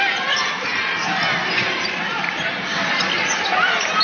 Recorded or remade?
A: recorded